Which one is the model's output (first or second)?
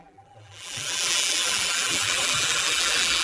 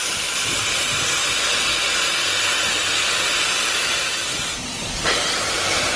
first